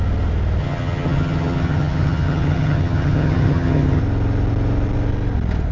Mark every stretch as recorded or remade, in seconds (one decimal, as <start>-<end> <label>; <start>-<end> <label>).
0.0-0.6 recorded; 0.6-4.0 remade; 4.0-5.7 recorded